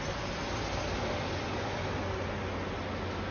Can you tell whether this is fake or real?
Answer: real